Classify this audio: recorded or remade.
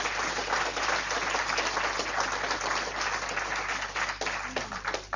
recorded